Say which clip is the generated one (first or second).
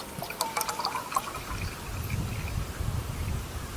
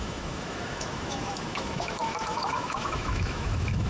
second